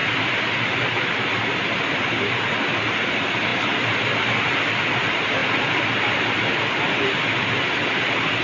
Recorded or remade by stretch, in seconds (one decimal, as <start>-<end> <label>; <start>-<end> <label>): 0.0-8.4 recorded